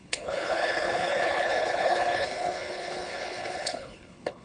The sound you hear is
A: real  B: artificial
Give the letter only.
B